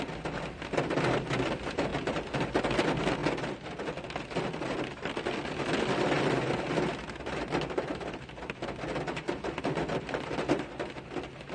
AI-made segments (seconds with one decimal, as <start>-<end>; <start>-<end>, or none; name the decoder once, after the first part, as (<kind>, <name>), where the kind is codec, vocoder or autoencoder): none

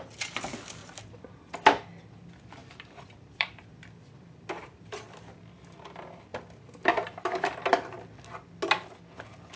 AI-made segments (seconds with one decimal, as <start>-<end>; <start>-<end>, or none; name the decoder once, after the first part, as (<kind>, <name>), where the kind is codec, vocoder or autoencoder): 0.8-1.3 (vocoder, BigVGAN v2); 2.6-5.6; 6.3-7.6